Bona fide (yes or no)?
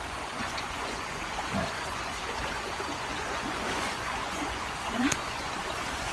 no